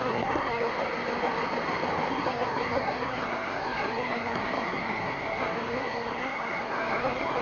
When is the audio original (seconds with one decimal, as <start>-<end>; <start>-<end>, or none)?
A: 0.7-2.1